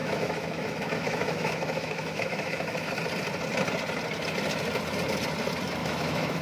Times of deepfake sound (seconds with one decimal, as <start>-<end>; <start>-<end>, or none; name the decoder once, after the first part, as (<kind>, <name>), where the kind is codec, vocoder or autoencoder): 0.0-2.9 (autoencoder, DAC-VAE); 5.8-6.4